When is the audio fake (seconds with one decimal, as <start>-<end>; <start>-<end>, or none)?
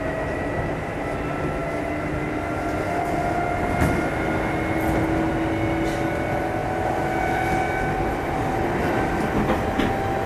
none